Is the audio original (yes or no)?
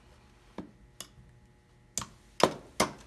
yes